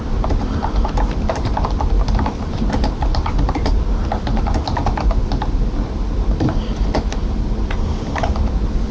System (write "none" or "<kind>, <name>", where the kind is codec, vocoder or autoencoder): vocoder, BigVGAN v2